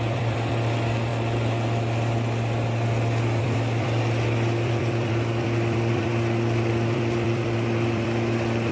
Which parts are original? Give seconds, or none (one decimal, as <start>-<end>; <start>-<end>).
1.1-3.4; 6.1-6.7